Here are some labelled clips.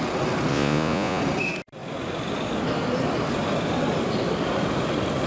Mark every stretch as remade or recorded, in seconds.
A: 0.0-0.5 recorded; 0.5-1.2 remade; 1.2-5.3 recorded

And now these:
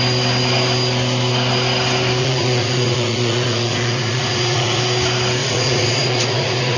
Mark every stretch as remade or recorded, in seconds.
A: 0.0-2.2 recorded; 2.2-4.8 remade; 4.8-5.4 recorded; 5.4-6.8 remade

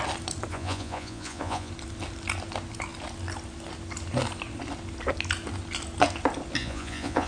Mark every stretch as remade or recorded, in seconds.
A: 0.0-0.5 recorded; 0.5-1.7 remade; 1.7-6.6 recorded; 6.6-7.3 remade

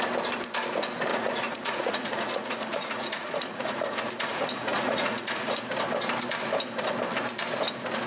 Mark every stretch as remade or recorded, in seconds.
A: 0.0-1.1 recorded; 1.1-5.6 remade; 5.6-8.1 recorded

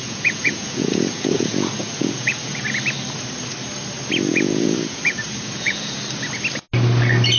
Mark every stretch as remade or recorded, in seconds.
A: 0.0-2.6 remade; 2.6-4.3 recorded; 4.3-6.0 remade; 6.0-7.4 recorded

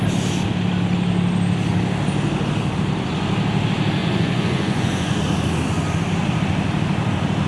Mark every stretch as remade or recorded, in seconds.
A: 0.0-4.0 recorded; 4.0-5.2 remade; 5.2-7.5 recorded